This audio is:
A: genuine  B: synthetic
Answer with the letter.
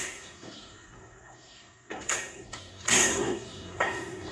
B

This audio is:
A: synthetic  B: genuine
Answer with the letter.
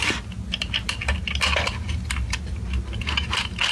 B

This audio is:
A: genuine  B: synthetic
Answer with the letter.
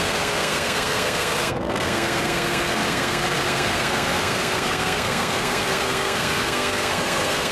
B